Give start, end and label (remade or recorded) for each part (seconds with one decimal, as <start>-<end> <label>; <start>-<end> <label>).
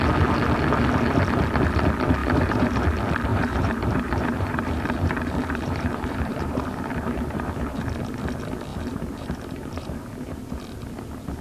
0.0-2.2 recorded; 2.2-2.8 remade; 2.8-3.3 recorded; 3.3-7.8 remade; 7.8-8.7 recorded; 8.7-10.5 remade; 10.5-11.4 recorded